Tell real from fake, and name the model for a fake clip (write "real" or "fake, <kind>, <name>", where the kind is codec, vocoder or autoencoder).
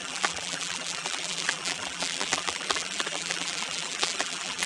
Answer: fake, vocoder, BigVGAN v2